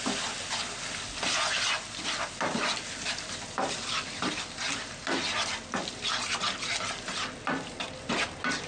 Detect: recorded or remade remade